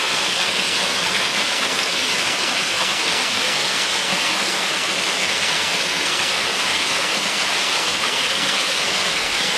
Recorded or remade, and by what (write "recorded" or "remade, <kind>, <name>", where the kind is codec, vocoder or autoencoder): remade, codec, SNAC